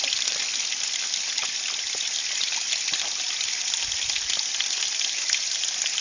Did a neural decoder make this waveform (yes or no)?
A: no